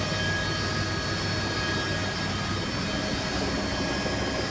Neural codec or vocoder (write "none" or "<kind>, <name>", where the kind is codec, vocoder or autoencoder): none